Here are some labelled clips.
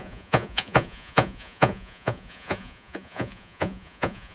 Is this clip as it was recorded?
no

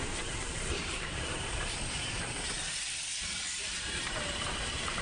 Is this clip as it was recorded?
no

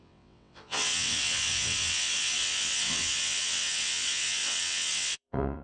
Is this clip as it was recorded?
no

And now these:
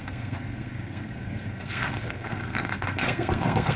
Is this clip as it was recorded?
no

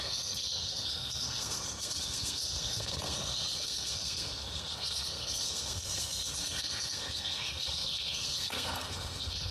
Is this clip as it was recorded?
no